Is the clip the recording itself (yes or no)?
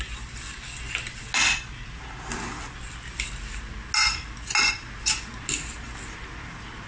yes